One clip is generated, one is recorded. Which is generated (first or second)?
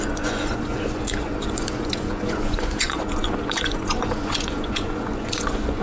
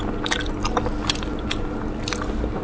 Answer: first